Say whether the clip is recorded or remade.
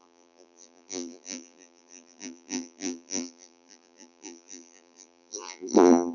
remade